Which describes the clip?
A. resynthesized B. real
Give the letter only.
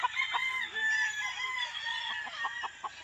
A